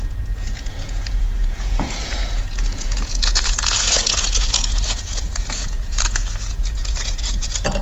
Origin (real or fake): fake